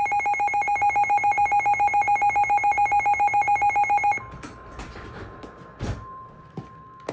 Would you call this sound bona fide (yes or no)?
yes